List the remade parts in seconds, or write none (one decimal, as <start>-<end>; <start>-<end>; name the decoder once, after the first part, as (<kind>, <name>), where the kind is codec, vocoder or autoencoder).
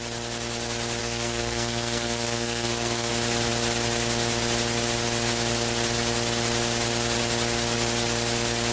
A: 1.0-3.1 (codec, SNAC)